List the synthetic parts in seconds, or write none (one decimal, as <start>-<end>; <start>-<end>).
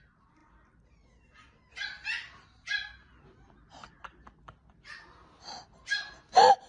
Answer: none